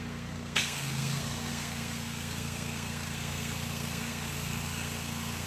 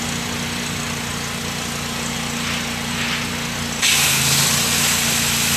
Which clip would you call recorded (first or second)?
second